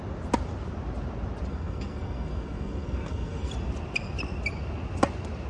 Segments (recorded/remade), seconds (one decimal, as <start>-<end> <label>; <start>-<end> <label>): 0.0-1.5 recorded; 1.5-3.5 remade; 3.5-5.5 recorded